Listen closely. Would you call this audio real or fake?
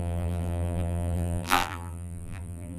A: fake